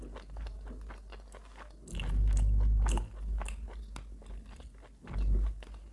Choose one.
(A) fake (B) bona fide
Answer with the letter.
B